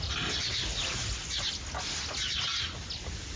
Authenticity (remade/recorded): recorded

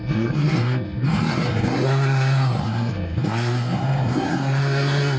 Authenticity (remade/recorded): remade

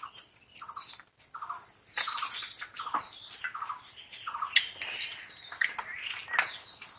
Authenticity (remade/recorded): recorded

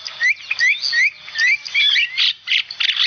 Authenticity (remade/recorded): recorded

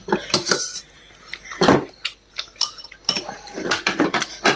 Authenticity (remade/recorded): recorded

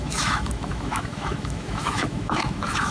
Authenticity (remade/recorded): remade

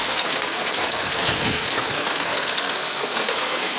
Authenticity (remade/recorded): remade